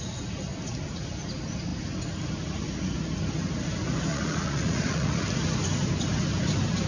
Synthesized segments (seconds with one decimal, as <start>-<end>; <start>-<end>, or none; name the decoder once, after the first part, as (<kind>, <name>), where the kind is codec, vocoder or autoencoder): 4.1-5.3 (vocoder, Vocos)